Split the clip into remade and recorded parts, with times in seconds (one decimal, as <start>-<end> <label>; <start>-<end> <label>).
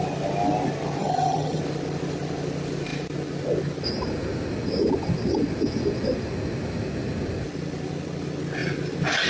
0.0-1.0 recorded; 1.0-1.6 remade; 1.6-9.3 recorded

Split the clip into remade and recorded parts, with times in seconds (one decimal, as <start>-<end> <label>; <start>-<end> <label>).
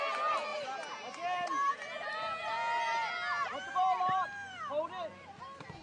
0.0-5.8 recorded